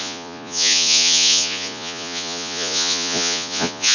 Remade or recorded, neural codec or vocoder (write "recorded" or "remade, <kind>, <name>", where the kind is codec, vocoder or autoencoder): remade, vocoder, Vocos